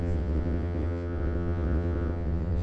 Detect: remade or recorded remade